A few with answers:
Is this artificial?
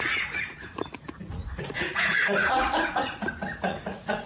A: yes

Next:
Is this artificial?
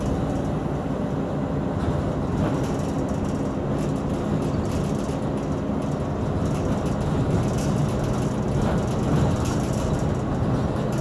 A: no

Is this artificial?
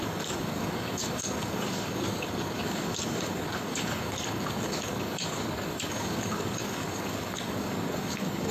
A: yes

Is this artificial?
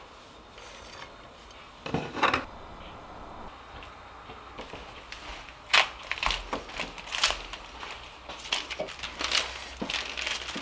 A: no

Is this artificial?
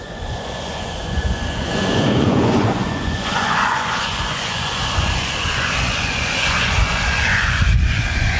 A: yes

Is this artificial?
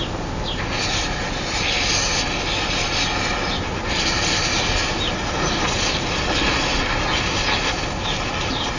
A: no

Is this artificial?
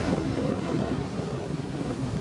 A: yes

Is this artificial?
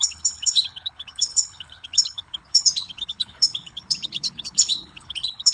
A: yes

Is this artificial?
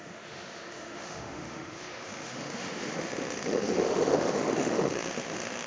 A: yes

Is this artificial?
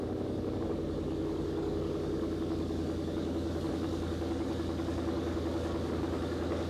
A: yes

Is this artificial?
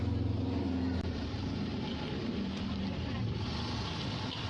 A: no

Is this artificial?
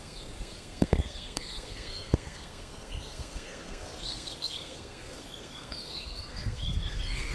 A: yes